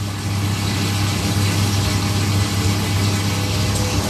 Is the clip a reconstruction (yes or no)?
no